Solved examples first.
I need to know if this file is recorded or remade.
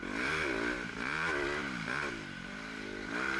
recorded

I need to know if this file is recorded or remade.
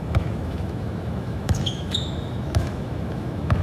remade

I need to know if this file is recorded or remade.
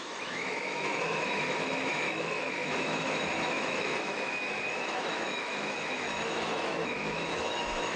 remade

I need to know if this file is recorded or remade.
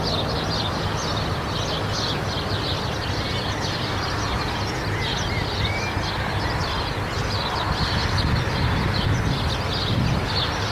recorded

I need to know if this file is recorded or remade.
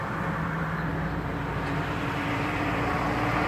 recorded